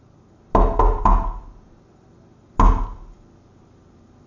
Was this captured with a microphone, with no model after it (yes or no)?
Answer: yes